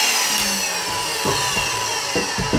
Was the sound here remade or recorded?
recorded